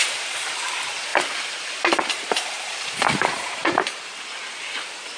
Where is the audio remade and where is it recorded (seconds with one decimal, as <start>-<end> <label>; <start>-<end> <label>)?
0.0-0.6 remade; 0.6-1.1 recorded; 1.1-4.2 remade; 4.2-5.2 recorded